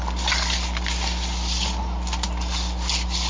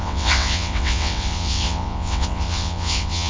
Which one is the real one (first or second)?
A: first